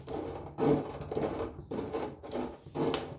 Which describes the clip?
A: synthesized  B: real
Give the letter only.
B